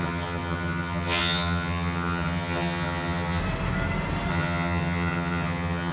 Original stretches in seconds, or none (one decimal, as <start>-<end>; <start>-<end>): 3.4-4.3